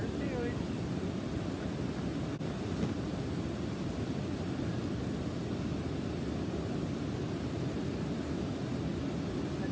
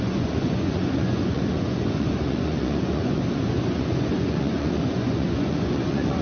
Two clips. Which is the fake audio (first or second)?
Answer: second